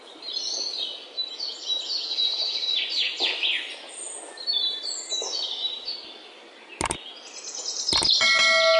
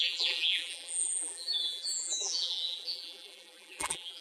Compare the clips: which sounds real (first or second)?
first